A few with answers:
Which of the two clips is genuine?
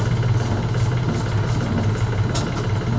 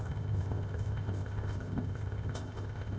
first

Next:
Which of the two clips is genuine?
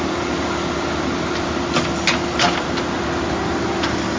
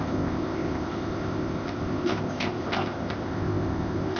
first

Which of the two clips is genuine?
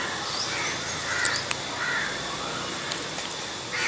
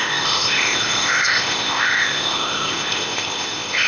first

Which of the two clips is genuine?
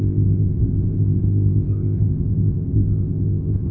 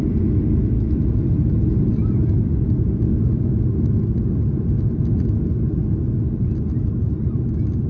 second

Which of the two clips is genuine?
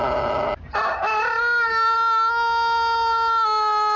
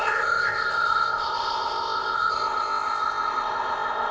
first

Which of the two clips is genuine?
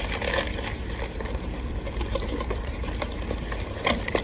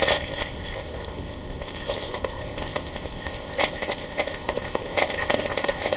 first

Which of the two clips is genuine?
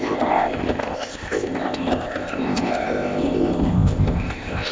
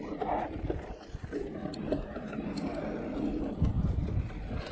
second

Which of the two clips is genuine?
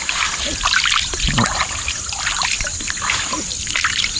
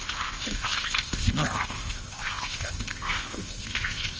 first